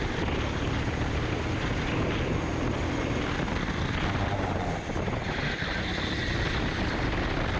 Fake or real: real